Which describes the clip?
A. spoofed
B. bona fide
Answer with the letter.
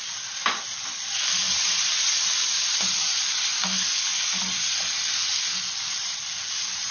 B